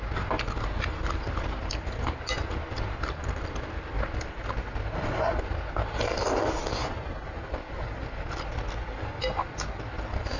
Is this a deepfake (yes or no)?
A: no